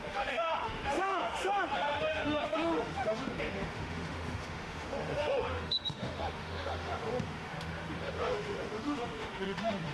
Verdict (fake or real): fake